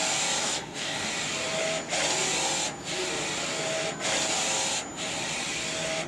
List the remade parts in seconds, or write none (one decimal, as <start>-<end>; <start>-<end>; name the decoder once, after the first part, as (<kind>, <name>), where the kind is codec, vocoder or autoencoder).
0.4-1.1 (codec, DAC)

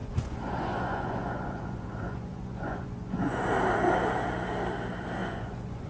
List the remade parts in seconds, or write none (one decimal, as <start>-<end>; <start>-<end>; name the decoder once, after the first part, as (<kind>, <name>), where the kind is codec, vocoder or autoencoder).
0.0-3.5 (vocoder, Vocos); 5.2-5.9

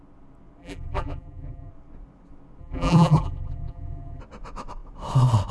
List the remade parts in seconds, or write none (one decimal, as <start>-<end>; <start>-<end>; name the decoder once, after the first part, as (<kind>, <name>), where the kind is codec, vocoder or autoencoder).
0.6-1.7 (vocoder, BigVGAN v2); 2.6-4.2

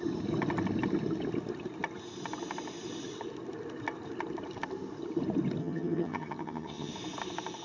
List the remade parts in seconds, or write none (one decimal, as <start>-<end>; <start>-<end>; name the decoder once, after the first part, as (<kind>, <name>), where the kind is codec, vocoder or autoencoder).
5.6-6.9 (vocoder, HiFi-GAN)